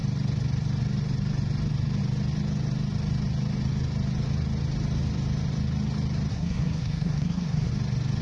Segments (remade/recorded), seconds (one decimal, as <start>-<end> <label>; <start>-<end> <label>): 0.0-6.3 recorded; 6.3-7.7 remade; 7.7-8.2 recorded